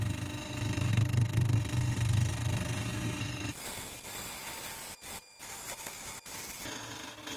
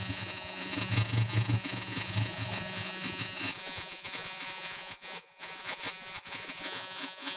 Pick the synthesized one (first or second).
second